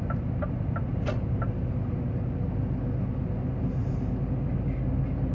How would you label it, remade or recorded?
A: recorded